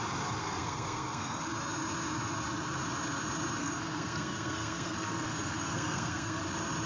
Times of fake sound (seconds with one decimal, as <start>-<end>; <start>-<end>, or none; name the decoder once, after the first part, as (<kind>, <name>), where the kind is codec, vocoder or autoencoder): 0.4-1.4 (codec, SNAC); 3.6-6.4